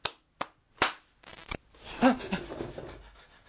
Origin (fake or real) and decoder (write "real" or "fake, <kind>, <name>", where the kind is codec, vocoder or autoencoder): real